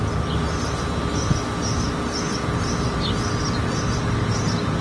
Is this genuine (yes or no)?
yes